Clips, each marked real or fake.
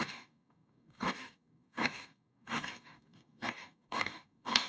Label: fake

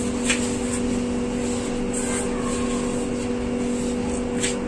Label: real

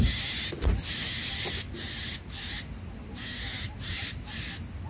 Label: real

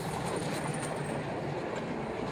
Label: real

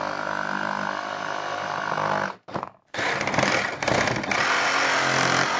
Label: real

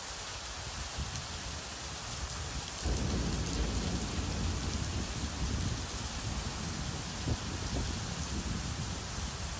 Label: real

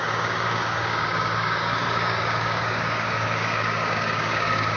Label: fake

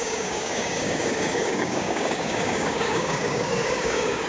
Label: fake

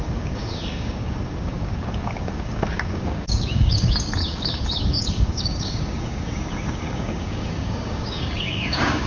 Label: fake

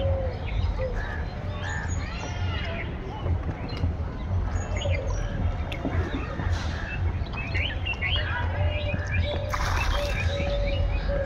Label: real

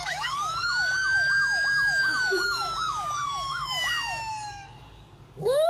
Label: fake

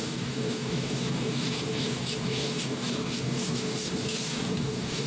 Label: fake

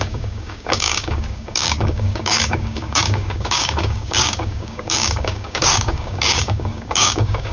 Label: fake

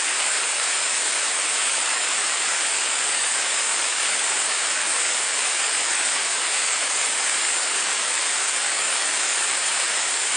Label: fake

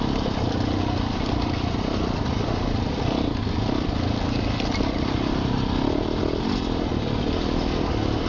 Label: real